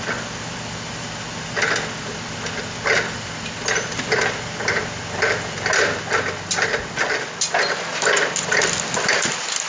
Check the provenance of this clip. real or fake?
real